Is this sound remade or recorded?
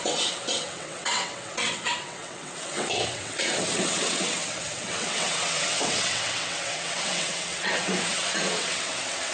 remade